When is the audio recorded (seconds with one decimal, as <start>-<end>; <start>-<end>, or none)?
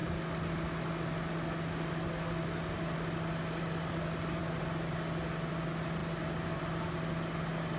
0.0-7.8